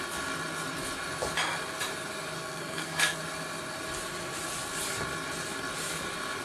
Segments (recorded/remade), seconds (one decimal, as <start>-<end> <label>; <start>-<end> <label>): 0.0-2.4 recorded; 2.4-3.2 remade; 3.2-6.4 recorded

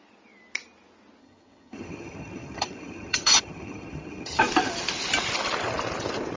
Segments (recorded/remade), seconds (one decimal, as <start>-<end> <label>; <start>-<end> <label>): 0.0-1.2 recorded; 1.2-4.4 remade; 4.4-6.4 recorded